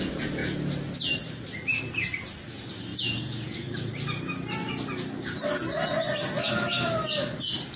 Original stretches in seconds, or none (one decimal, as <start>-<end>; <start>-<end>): 0.0-2.9; 3.9-7.8